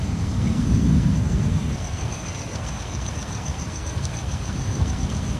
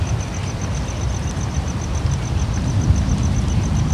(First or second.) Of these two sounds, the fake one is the first